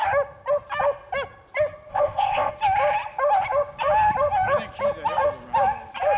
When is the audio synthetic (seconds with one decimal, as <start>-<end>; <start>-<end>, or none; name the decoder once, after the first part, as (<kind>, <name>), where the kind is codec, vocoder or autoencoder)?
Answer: 1.9-2.5 (codec, ZipCodec)